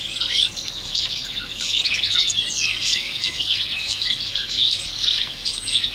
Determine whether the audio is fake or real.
fake